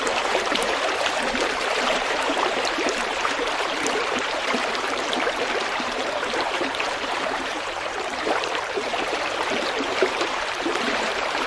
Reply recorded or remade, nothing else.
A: remade